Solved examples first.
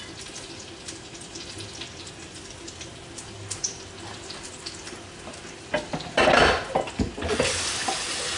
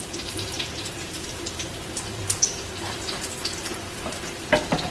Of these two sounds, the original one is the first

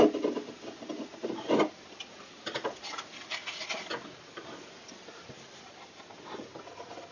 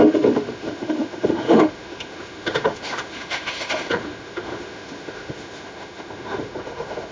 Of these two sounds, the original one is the first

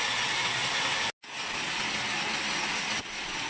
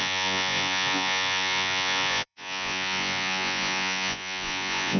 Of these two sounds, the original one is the first